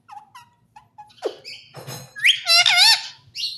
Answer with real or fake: real